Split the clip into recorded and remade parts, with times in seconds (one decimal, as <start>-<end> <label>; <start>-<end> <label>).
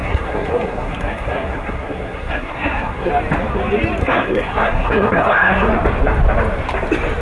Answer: 0.0-3.1 remade; 3.1-4.0 recorded; 4.0-5.7 remade; 5.7-7.2 recorded